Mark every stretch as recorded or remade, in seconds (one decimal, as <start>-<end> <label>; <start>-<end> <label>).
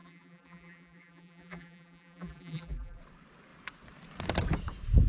0.0-3.0 remade; 3.0-5.1 recorded